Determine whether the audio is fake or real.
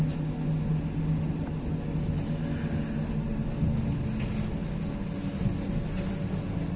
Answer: real